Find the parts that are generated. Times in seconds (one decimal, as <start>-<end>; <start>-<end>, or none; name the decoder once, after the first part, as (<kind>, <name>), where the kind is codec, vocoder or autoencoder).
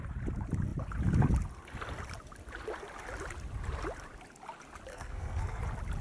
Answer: 4.9-5.6 (codec, SNAC)